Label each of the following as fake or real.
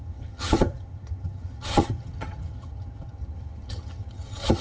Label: fake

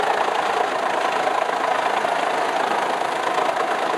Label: real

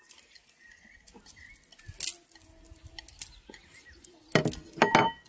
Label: real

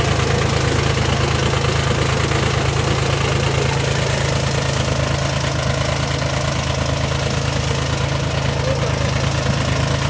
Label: real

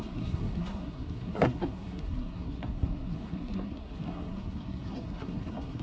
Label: fake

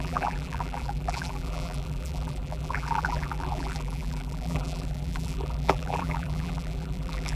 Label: fake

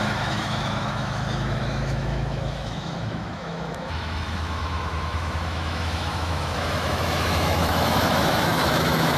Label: fake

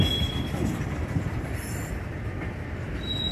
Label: real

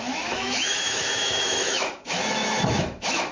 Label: fake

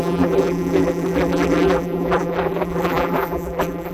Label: fake